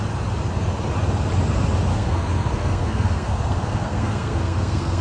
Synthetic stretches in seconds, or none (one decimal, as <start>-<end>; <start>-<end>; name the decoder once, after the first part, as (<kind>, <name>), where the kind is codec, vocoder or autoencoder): 1.9-5.0 (codec, SNAC)